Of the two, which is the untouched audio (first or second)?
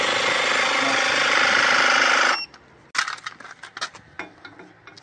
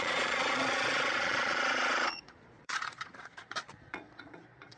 first